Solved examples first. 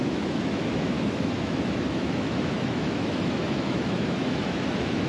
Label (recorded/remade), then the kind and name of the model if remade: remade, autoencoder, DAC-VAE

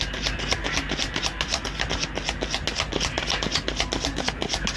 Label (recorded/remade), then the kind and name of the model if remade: recorded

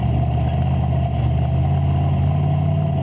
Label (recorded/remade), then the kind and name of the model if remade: recorded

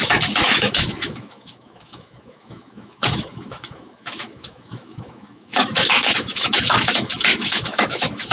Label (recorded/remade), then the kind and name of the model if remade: remade, autoencoder, DAC-VAE